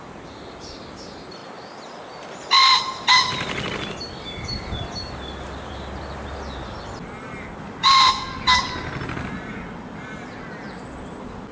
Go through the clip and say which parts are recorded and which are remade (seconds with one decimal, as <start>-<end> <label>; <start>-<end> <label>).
0.0-11.5 recorded